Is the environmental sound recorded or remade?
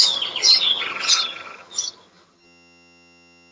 remade